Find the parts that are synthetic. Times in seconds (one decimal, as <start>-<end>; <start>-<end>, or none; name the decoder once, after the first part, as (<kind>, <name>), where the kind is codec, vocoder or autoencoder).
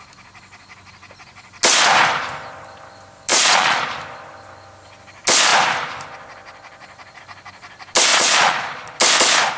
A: 3.3-4.0 (vocoder, Vocos); 8.1-9.0